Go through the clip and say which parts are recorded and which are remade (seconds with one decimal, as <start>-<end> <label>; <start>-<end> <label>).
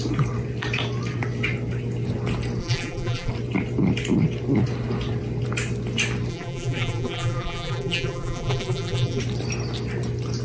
0.0-2.6 recorded; 2.6-3.3 remade; 3.3-6.3 recorded; 6.3-9.2 remade; 9.2-10.4 recorded